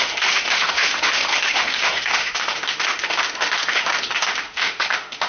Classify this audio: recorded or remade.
remade